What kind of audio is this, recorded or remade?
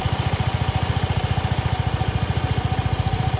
recorded